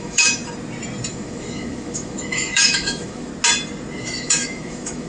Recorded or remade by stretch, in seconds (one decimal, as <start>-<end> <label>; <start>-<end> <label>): 0.0-0.4 remade; 0.4-1.1 recorded; 1.1-3.3 remade; 3.3-4.0 recorded; 4.0-5.1 remade